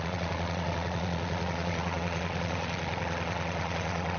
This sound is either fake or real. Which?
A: fake